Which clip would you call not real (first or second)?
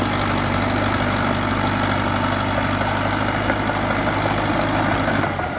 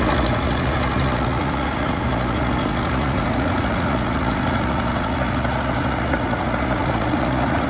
second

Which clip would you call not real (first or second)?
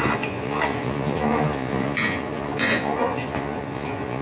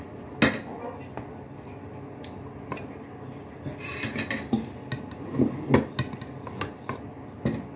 first